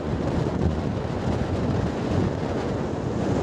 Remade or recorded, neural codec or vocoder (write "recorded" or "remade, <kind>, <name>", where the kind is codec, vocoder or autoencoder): remade, vocoder, Vocos